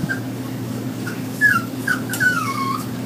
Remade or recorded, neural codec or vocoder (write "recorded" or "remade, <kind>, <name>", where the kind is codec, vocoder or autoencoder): remade, codec, DAC